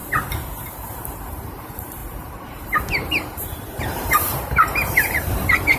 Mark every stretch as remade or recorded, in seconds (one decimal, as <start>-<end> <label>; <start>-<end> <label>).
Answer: 0.0-1.1 recorded; 1.1-5.8 remade